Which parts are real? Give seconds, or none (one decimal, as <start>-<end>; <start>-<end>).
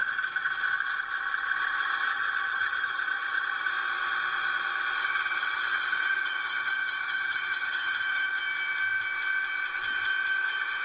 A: 0.0-2.1; 3.7-5.0; 8.4-10.8